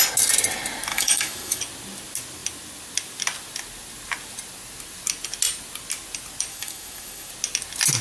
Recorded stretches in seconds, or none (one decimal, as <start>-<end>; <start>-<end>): 0.0-0.9; 1.6-6.5; 7.3-8.0